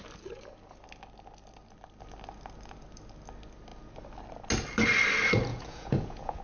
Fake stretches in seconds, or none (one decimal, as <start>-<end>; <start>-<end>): 5.5-6.4